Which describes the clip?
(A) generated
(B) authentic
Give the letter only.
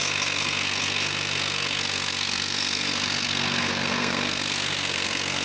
A